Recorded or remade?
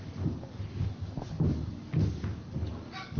remade